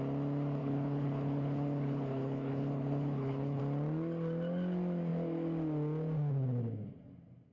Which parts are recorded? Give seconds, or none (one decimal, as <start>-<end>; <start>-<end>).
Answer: 0.0-0.6; 3.6-7.5